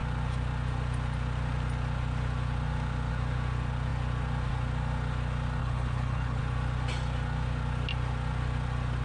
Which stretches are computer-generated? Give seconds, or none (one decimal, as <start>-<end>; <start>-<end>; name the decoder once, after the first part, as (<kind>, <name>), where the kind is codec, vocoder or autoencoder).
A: 5.6-6.4 (codec, HILCodec)